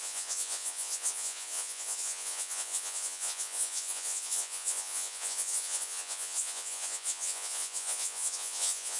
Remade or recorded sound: remade